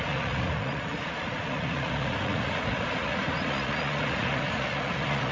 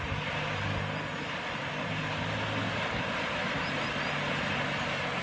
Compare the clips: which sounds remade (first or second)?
first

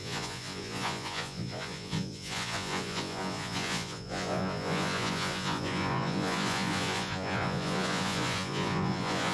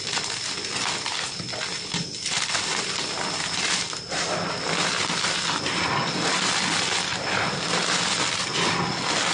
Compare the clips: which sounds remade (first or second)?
first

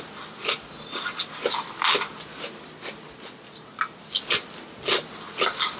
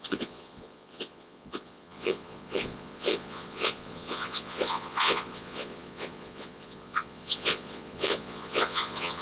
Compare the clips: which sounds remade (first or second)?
second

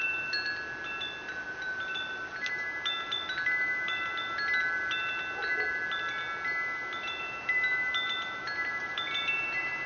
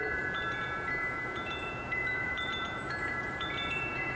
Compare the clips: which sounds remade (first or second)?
second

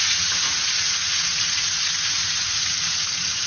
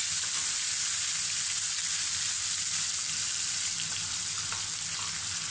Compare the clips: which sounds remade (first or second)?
first